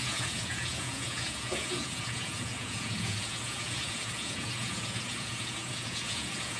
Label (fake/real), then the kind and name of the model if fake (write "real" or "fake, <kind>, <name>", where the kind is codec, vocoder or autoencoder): fake, vocoder, Vocos